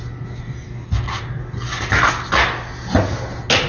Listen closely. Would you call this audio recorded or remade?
recorded